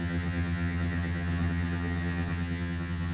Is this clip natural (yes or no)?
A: no